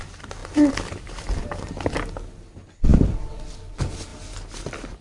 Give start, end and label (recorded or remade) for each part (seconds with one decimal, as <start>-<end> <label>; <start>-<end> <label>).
0.0-0.4 recorded; 0.4-1.7 remade; 1.7-2.9 recorded; 2.9-3.4 remade; 3.4-4.1 recorded; 4.1-5.0 remade